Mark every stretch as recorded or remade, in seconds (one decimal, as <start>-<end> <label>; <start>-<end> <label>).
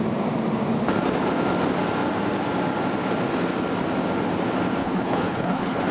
0.0-4.8 recorded; 4.8-5.9 remade